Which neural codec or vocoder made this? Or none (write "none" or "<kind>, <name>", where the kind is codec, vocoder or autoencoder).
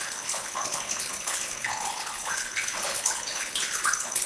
codec, HILCodec